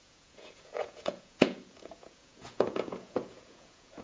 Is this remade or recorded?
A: remade